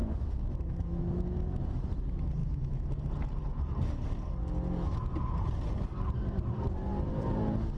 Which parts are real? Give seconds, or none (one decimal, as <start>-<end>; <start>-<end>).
1.6-2.4; 3.1-7.8